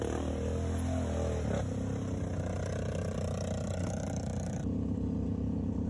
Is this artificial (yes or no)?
no